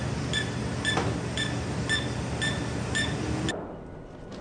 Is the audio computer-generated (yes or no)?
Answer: no